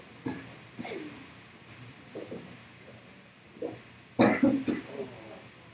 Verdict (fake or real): real